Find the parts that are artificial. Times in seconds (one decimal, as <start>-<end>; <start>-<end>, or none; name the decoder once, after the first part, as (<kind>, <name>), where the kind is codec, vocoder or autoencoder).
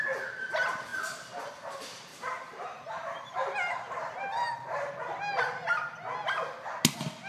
2.1-4.9 (vocoder, BigVGAN v2)